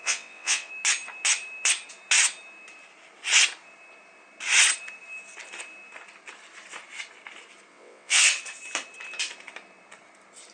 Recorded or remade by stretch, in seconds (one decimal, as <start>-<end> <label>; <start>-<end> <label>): 0.0-0.7 remade; 0.7-7.7 recorded; 7.7-8.2 remade; 8.2-10.5 recorded

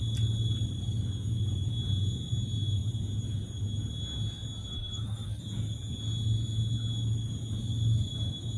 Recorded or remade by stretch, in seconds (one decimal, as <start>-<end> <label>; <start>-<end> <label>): 0.0-4.7 recorded; 4.7-5.4 remade; 5.4-8.6 recorded

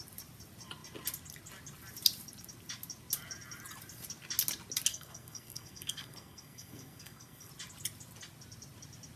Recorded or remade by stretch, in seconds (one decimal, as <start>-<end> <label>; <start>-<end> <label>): 0.0-4.9 recorded; 4.9-7.5 remade; 7.5-9.2 recorded

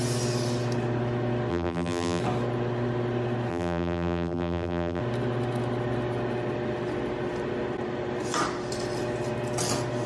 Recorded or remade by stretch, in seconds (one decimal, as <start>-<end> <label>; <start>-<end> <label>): 0.0-1.5 recorded; 1.5-2.2 remade; 2.2-3.5 recorded; 3.5-5.0 remade; 5.0-10.1 recorded

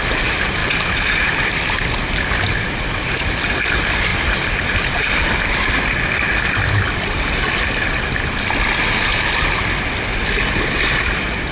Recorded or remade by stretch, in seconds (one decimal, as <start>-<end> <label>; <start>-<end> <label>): 0.0-11.5 recorded

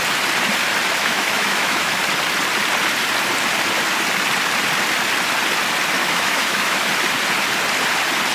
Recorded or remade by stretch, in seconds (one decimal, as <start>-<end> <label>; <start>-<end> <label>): 0.0-1.0 recorded; 1.0-2.0 remade; 2.0-6.0 recorded; 6.0-6.9 remade; 6.9-8.3 recorded

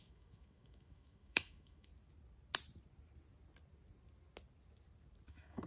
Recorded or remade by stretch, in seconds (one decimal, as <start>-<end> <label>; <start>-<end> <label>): 0.0-1.9 remade; 1.9-5.3 recorded; 5.3-5.7 remade